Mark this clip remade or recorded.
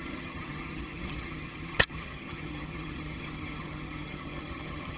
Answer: remade